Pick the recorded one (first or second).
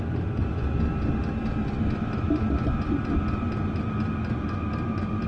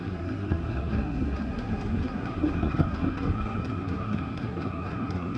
first